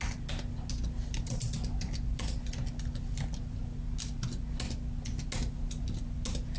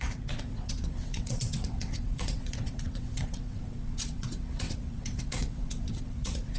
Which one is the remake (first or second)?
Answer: second